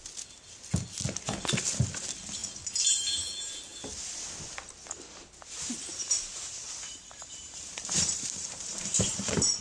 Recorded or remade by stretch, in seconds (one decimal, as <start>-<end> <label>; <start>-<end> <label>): 0.0-5.9 recorded; 5.9-9.1 remade; 9.1-9.6 recorded